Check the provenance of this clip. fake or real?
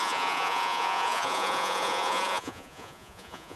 fake